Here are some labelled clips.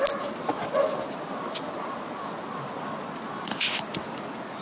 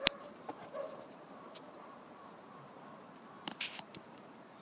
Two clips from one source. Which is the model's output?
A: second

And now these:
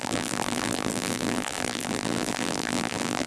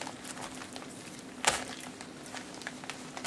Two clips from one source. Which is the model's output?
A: first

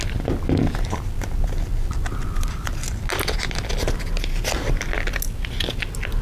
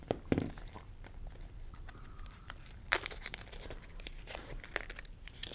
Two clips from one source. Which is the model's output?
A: second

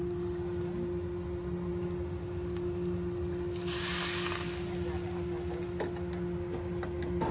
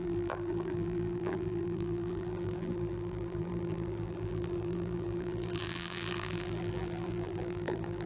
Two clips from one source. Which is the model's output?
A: second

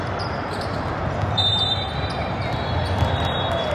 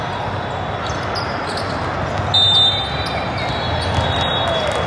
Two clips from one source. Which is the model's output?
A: first